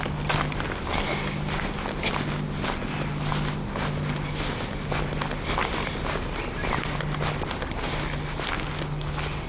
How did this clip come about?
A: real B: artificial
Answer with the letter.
A